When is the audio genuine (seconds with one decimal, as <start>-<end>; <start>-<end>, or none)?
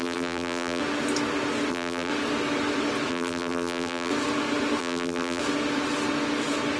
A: 0.8-1.7; 2.1-3.1; 4.1-4.8; 5.4-6.8